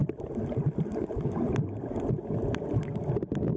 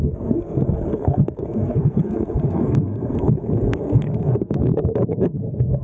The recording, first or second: first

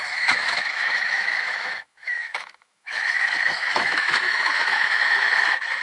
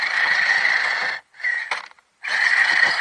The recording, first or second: second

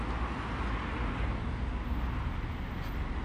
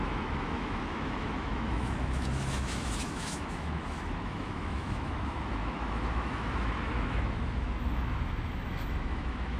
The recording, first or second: first